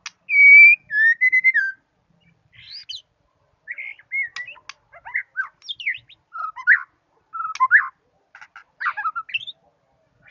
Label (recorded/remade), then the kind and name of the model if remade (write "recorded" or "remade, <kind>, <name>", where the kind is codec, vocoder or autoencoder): recorded